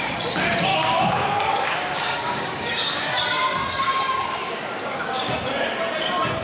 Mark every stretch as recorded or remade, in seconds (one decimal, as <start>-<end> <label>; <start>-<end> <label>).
0.0-0.7 recorded; 0.7-3.2 remade; 3.2-4.4 recorded; 4.4-5.1 remade; 5.1-6.4 recorded